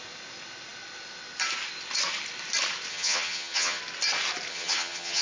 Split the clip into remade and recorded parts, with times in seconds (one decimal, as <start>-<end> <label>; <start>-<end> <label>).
0.0-2.9 recorded; 2.9-3.8 remade; 3.8-4.5 recorded; 4.5-5.2 remade